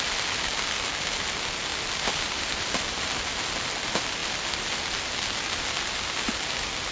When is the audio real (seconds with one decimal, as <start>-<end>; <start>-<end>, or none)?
0.0-6.9